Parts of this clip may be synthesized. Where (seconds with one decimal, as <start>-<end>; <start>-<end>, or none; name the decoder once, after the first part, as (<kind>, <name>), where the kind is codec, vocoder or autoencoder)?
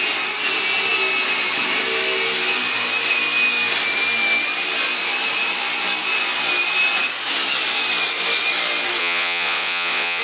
9.0-10.2 (vocoder, Vocos)